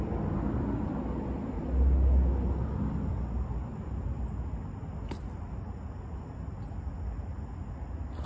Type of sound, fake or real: real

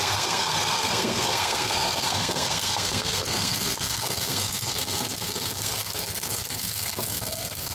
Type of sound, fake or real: fake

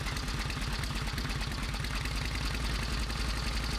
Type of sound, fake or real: real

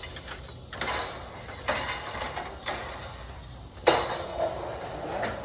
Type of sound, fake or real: real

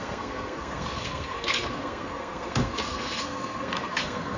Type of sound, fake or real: fake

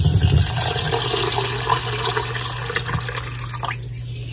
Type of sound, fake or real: real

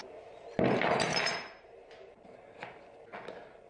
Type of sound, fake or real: real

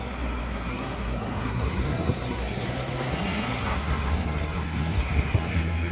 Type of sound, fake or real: fake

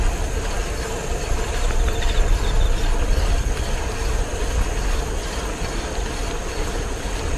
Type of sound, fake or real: real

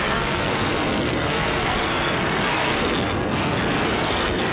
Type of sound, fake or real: fake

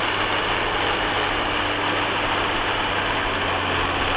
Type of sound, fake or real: real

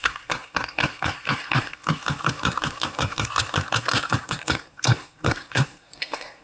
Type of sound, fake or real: fake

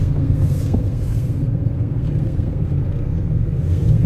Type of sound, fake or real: fake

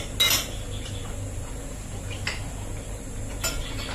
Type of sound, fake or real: real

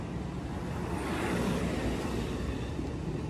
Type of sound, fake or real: real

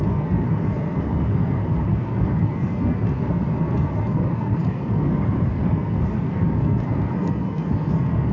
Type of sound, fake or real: fake